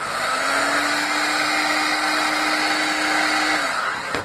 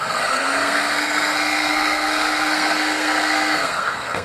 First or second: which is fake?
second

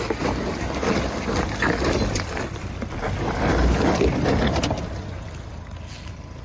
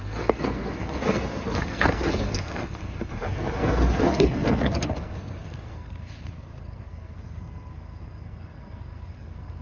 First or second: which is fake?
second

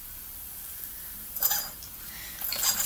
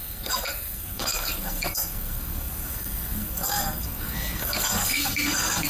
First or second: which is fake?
second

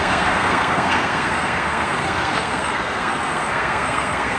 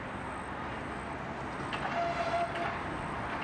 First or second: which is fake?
first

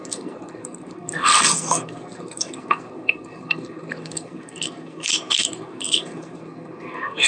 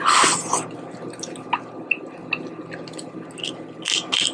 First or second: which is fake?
first